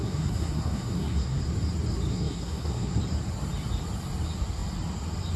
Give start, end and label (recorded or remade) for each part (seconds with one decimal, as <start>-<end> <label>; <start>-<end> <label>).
0.0-1.4 remade; 1.4-2.1 recorded; 2.1-3.0 remade; 3.0-5.4 recorded